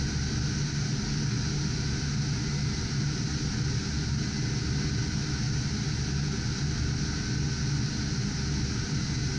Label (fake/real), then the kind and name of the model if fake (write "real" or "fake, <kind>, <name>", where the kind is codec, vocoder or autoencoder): real